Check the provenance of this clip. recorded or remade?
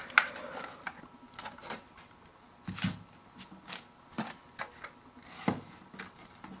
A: recorded